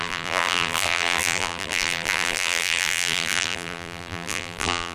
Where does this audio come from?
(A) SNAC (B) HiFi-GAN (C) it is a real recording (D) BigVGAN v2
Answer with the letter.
D